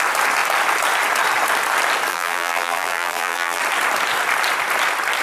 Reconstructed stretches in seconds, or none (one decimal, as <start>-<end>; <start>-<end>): 2.1-3.6